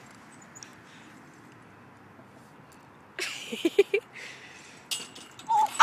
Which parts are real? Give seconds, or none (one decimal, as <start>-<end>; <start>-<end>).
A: 0.0-5.8